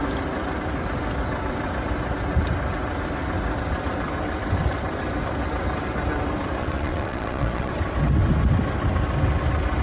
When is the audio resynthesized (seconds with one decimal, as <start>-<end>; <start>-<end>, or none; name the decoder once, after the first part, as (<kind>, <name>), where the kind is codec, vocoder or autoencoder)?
6.6-7.7 (vocoder, Vocos)